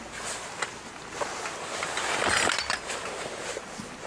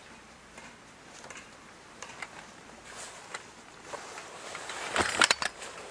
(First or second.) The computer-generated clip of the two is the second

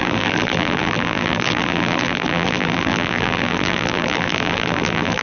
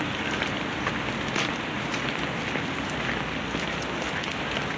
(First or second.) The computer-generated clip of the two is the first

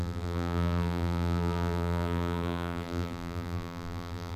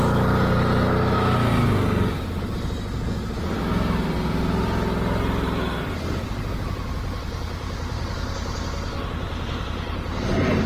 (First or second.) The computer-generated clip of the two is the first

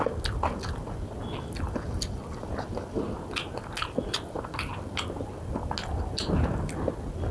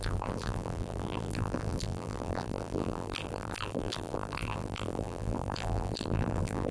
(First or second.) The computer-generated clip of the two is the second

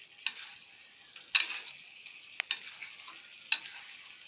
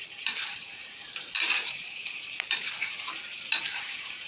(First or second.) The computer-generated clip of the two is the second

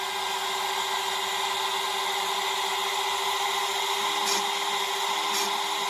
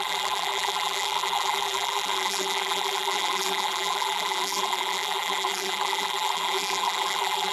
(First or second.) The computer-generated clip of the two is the second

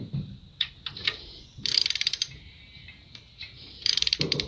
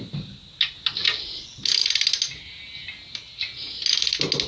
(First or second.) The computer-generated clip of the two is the first